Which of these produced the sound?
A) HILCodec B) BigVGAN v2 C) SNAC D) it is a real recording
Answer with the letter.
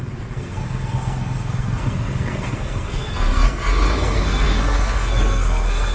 C